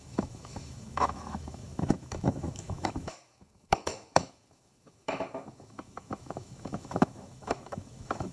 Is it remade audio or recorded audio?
remade